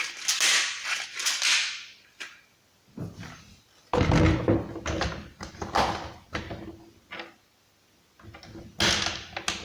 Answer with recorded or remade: recorded